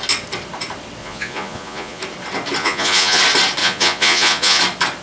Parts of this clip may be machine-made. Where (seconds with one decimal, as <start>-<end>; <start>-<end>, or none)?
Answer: 1.0-2.0; 2.6-3.2; 3.6-4.6